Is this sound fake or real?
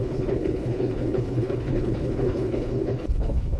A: fake